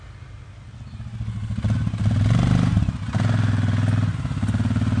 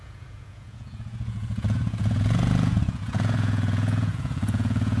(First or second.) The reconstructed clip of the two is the second